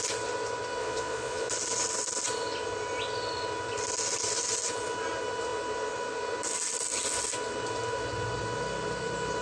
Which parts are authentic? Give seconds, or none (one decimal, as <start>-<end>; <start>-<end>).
0.0-0.8; 1.5-9.4